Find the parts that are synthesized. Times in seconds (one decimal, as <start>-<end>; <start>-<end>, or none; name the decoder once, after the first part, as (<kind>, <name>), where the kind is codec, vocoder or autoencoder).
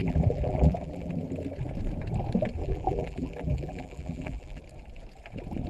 0.0-1.1 (vocoder, BigVGAN v2); 2.6-4.6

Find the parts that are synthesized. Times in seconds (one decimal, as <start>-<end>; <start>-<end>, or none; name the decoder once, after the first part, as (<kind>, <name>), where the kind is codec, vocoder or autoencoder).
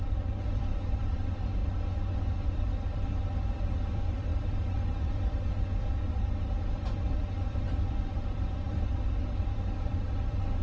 0.0-1.6 (vocoder, BigVGAN v2); 2.4-10.6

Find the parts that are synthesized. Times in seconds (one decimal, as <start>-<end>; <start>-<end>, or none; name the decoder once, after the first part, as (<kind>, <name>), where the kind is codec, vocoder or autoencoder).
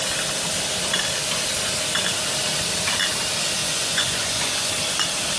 3.6-4.7 (vocoder, Vocos)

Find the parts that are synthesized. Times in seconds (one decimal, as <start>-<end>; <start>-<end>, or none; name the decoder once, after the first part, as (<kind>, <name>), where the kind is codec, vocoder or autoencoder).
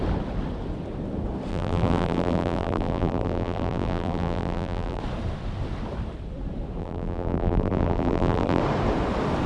1.5-5.0 (vocoder, BigVGAN v2); 6.8-8.6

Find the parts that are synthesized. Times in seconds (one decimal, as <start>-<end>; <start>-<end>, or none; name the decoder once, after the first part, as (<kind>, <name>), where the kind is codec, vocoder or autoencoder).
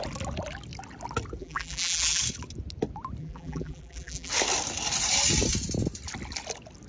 1.4-2.2 (vocoder, BigVGAN v2); 3.2-4.3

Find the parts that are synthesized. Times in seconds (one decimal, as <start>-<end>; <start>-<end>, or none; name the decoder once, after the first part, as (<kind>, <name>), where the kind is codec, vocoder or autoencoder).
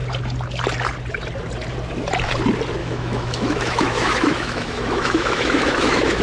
2.8-6.2 (autoencoder, DAC-VAE)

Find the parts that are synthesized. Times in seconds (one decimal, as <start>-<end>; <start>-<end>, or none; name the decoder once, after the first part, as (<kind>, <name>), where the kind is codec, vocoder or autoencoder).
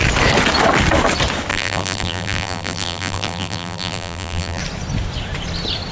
1.5-4.6 (vocoder, BigVGAN v2)